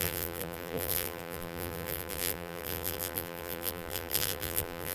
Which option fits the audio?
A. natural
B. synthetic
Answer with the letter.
B